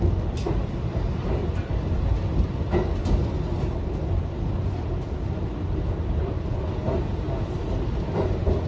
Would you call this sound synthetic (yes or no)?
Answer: no